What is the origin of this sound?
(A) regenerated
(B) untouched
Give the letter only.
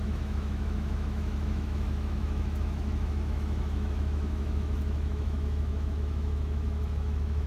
A